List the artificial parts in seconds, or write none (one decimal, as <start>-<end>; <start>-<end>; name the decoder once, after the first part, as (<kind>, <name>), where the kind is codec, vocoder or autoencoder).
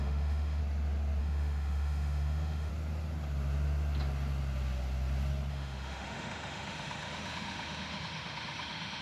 0.0-0.6 (autoencoder, DAC-VAE); 1.2-2.7; 5.5-9.0